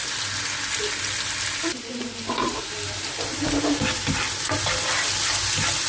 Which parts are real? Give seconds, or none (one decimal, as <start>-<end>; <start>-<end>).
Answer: 0.0-5.9